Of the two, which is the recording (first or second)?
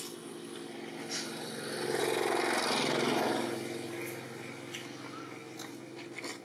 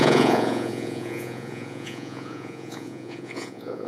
first